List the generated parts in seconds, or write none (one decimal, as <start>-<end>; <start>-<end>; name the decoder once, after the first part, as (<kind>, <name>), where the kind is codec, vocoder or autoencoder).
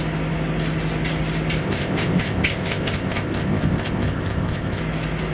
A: 1.6-4.8 (codec, ZipCodec)